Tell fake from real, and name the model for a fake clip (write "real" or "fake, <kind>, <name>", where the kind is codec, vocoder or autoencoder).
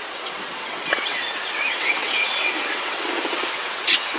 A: fake, vocoder, WaveNeXt